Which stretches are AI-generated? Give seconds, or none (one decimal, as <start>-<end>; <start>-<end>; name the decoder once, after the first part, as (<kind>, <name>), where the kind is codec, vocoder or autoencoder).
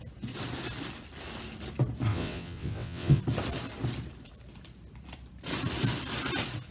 2.1-3.2 (vocoder, WaveNeXt)